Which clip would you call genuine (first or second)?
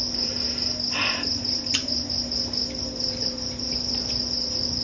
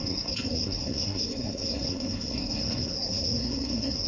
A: first